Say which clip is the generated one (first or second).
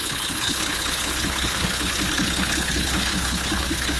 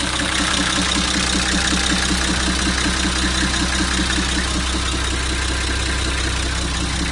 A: first